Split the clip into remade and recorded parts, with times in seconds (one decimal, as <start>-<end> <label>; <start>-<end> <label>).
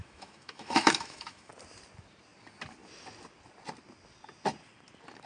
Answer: 0.0-1.5 remade; 1.5-5.3 recorded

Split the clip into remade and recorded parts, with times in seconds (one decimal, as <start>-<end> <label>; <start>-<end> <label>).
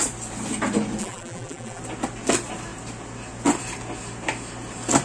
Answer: 0.0-1.0 recorded; 1.0-1.8 remade; 1.8-5.0 recorded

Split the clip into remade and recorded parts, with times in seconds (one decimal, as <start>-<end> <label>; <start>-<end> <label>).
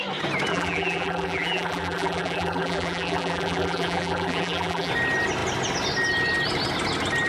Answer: 0.0-0.5 recorded; 0.5-4.9 remade; 4.9-7.3 recorded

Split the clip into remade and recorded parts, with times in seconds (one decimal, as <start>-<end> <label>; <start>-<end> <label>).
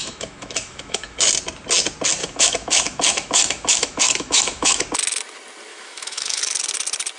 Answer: 0.0-1.2 remade; 1.2-2.2 recorded; 2.2-4.8 remade; 4.8-5.7 recorded; 5.7-6.4 remade; 6.4-7.2 recorded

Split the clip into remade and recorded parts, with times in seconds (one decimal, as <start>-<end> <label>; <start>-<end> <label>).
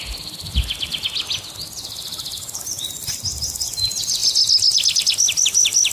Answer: 0.0-5.9 recorded